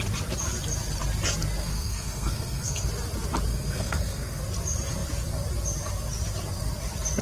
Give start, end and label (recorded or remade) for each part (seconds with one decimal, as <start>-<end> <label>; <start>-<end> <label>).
0.0-1.6 recorded; 1.6-2.9 remade; 2.9-3.5 recorded; 3.5-4.4 remade; 4.4-7.2 recorded